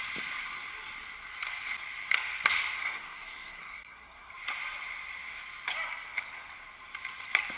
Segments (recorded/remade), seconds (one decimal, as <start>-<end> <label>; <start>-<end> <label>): 0.0-2.8 recorded; 2.8-4.3 remade; 4.3-7.6 recorded